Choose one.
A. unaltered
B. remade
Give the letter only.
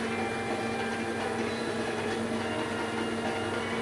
A